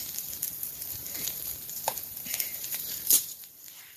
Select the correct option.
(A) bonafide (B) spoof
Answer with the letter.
B